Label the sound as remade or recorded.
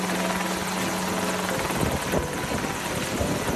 recorded